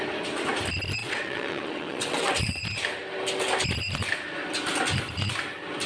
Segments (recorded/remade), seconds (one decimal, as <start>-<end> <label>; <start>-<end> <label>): 0.0-1.0 recorded; 1.0-2.6 remade; 2.6-5.9 recorded